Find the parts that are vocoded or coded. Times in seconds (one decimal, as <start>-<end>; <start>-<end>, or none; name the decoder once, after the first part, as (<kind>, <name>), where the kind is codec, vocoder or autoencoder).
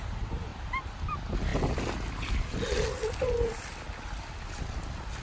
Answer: none